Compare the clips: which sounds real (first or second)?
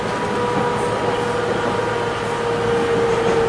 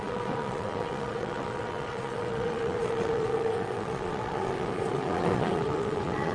first